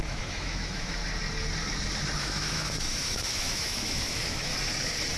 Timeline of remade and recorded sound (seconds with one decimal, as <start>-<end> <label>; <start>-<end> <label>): 0.0-1.0 remade; 1.0-2.2 recorded; 2.2-4.5 remade; 4.5-5.2 recorded